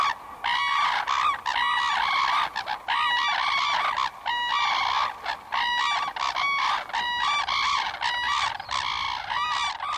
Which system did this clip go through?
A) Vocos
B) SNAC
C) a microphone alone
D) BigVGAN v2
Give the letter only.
C